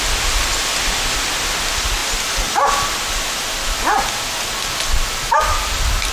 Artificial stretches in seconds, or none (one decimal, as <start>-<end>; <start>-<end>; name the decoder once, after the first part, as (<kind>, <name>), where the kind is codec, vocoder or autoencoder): none

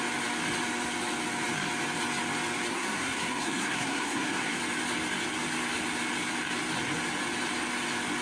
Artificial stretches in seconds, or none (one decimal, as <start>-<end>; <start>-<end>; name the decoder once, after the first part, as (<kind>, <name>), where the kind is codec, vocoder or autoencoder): 2.7-4.6 (codec, SNAC)

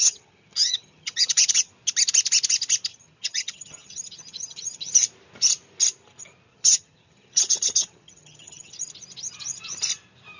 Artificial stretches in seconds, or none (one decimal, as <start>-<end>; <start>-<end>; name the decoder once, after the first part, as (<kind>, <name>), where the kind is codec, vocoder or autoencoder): 0.0-1.7 (vocoder, HiFi-GAN); 2.9-4.9; 6.5-8.7

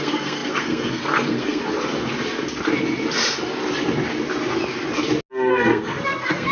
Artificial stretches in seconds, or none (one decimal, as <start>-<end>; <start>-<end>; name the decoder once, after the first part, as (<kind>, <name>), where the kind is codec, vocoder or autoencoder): 0.0-1.6 (codec, SNAC); 5.5-6.5

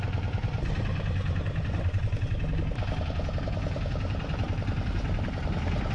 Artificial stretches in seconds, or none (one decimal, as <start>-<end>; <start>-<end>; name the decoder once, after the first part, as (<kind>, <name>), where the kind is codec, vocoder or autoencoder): none